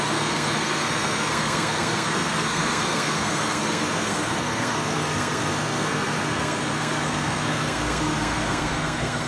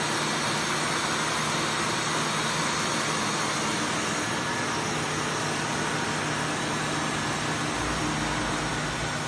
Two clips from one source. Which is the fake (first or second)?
first